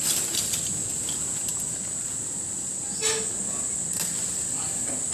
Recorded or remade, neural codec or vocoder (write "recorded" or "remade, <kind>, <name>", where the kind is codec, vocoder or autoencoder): recorded